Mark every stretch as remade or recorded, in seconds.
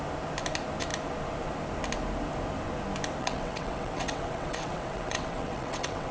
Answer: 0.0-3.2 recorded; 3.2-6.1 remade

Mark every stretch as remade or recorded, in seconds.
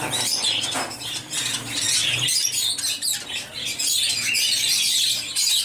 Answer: 0.0-5.6 recorded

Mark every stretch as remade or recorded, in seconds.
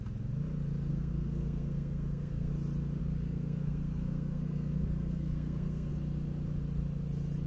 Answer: 0.0-0.9 recorded; 0.9-2.5 remade; 2.5-3.0 recorded; 3.0-5.9 remade; 5.9-7.5 recorded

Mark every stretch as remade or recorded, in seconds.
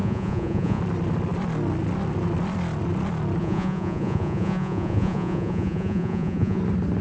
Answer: 0.0-0.8 remade; 0.8-3.4 recorded; 3.4-6.6 remade; 6.6-7.0 recorded